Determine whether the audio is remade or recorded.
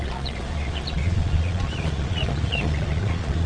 remade